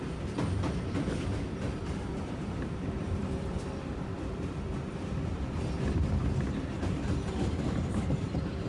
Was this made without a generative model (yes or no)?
no